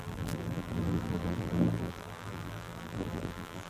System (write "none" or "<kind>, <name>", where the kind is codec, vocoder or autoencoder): vocoder, BigVGAN v2